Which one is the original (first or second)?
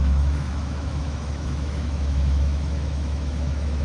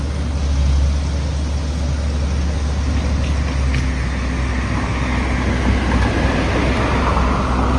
second